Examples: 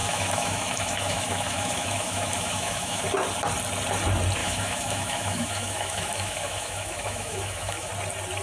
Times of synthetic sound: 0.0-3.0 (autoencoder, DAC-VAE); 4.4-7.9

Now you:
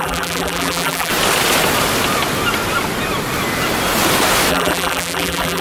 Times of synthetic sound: 0.0-1.1 (vocoder, BigVGAN v2); 4.5-5.6